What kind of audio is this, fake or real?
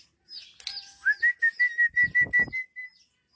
real